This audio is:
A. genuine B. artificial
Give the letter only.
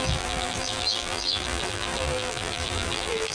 B